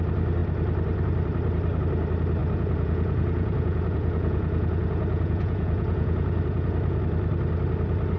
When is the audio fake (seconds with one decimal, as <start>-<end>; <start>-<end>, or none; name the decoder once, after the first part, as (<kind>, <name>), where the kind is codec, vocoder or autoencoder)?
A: 2.4-7.0 (vocoder, Vocos)

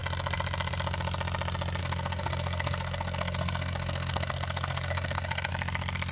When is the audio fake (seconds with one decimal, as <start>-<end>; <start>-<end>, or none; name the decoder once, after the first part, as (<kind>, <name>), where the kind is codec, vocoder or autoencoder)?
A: 1.8-5.5 (codec, SNAC)

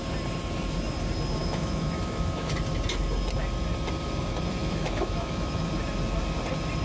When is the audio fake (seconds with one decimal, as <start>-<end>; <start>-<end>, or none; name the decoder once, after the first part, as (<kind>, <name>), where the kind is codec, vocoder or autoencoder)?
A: 1.4-2.5 (autoencoder, DAC-VAE); 4.6-5.7